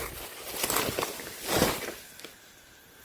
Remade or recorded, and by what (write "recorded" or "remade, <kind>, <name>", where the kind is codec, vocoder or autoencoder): recorded